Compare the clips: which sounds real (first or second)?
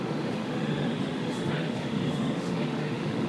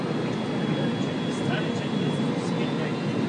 second